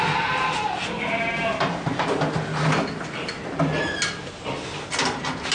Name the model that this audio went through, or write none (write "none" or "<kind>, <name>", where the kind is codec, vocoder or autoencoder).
none